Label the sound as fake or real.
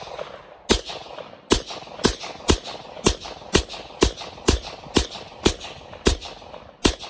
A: real